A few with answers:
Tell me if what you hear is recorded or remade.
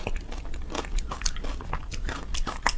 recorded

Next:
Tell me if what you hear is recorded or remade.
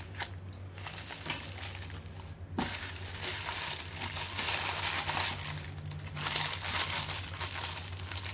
recorded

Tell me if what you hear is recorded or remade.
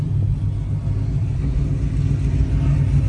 recorded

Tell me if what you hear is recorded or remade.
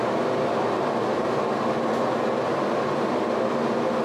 recorded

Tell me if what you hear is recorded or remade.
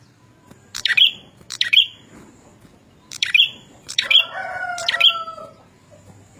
remade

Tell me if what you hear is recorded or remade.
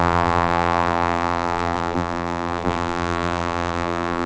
remade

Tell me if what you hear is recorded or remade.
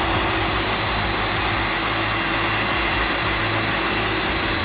recorded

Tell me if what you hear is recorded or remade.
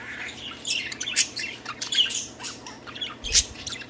remade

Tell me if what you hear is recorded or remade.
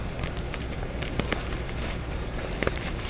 remade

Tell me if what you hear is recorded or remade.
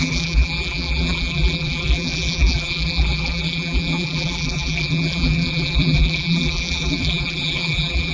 remade